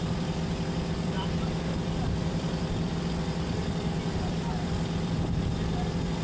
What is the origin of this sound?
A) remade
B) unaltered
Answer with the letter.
B